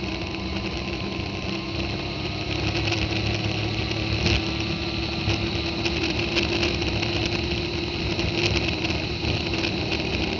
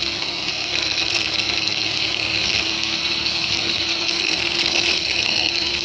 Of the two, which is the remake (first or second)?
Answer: second